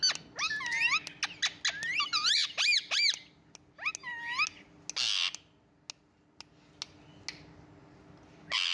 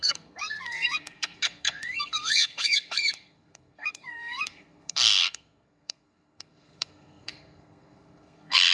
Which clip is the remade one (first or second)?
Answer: second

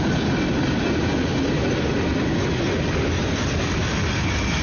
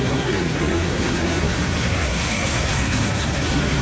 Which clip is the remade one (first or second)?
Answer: second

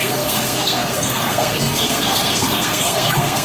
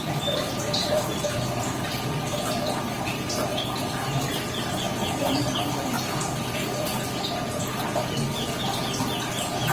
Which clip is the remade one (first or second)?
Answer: first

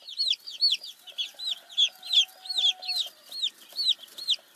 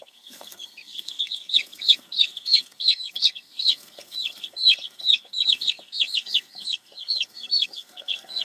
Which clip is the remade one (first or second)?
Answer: second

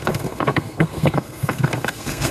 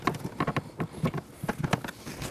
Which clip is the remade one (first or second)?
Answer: first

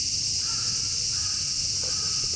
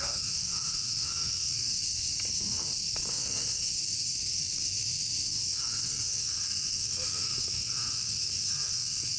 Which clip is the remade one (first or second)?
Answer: second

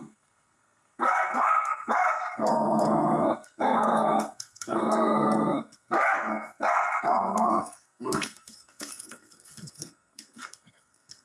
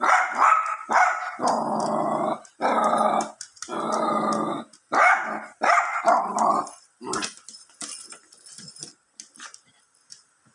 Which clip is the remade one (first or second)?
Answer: first